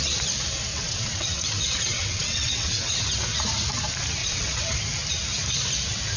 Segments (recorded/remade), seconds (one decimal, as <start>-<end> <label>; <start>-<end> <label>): 0.0-0.7 recorded; 0.7-2.9 remade; 2.9-4.2 recorded; 4.2-4.8 remade; 4.8-6.2 recorded